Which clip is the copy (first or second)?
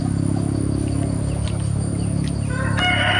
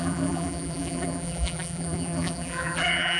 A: second